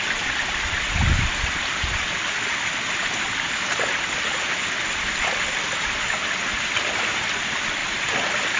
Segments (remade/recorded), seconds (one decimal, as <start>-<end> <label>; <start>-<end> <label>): 0.0-8.6 recorded